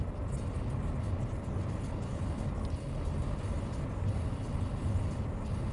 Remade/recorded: recorded